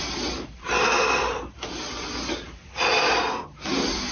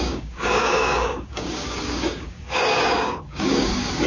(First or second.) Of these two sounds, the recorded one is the first